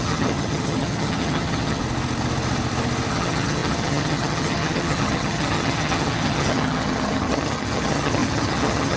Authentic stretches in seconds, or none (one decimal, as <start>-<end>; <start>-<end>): 1.8-3.1

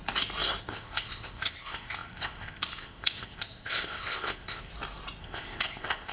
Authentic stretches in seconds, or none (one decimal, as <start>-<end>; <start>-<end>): 0.0-0.6; 4.7-5.2